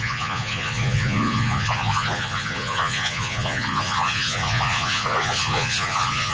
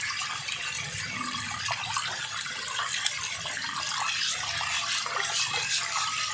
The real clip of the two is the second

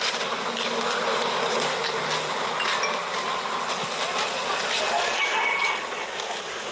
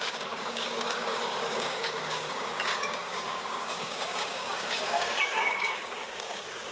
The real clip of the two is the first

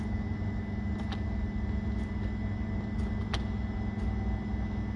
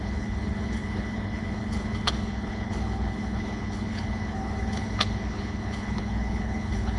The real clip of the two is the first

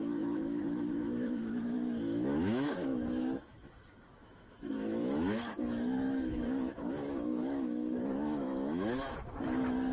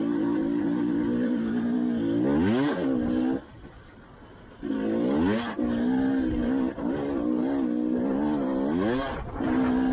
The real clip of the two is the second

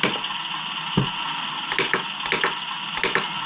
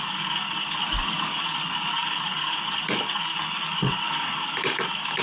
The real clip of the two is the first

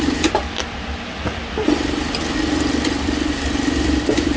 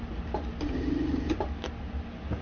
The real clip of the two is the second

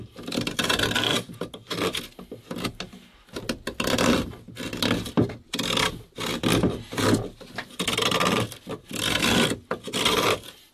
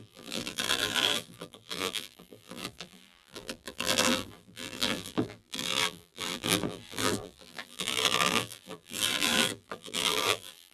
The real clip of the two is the first